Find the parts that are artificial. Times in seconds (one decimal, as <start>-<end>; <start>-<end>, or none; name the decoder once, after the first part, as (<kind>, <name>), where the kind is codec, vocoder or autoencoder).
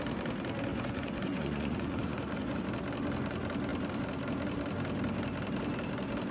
0.7-2.6 (vocoder, Vocos)